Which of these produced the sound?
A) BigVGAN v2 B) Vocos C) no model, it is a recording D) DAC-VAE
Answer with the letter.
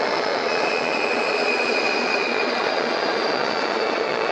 B